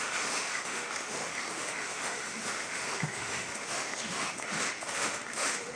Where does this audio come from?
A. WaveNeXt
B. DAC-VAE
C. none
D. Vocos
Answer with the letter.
B